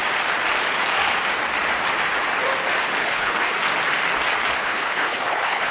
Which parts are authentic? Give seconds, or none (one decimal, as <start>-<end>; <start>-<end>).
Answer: 0.0-3.0; 3.5-4.6